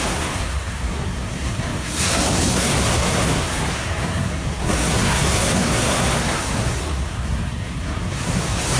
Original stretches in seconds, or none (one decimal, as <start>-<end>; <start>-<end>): none